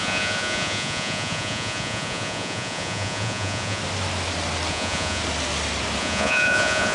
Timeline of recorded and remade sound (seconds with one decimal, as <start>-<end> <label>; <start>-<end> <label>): 0.0-3.8 remade; 3.8-4.7 recorded; 4.7-5.2 remade; 5.2-6.0 recorded; 6.0-6.9 remade